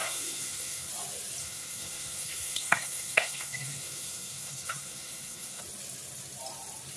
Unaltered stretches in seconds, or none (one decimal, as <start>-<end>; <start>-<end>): 0.9-1.4; 5.6-7.0